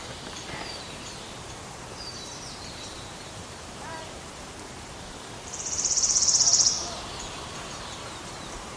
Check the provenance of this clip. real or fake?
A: fake